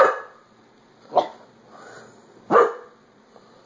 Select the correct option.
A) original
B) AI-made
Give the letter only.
A